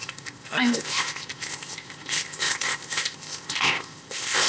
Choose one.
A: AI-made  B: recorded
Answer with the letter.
A